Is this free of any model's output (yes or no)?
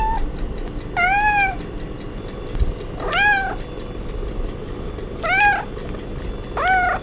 yes